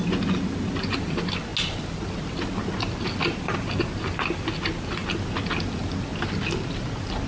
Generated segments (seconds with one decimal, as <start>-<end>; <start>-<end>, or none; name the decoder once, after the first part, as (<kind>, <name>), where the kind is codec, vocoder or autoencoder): none